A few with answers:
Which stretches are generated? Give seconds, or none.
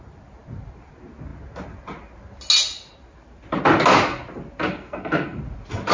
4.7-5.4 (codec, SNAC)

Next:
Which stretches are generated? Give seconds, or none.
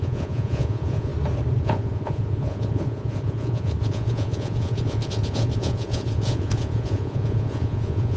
0.0-1.1 (vocoder, Vocos); 1.6-8.2